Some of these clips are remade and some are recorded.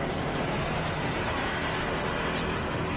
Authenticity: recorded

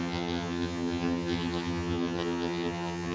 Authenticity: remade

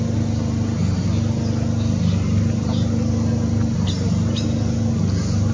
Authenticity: recorded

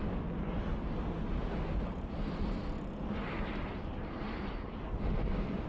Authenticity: recorded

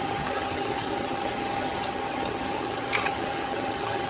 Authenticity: remade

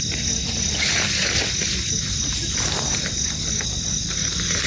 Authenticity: recorded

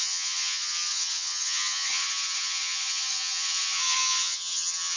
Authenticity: remade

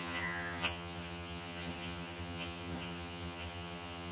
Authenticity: remade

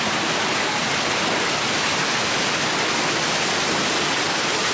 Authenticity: recorded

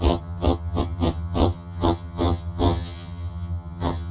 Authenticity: remade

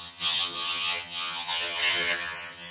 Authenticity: remade